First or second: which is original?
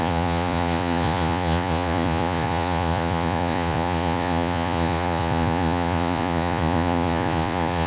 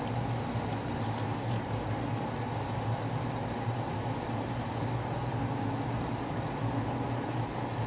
second